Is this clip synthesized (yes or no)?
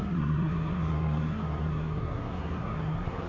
yes